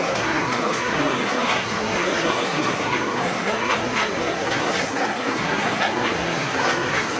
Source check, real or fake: fake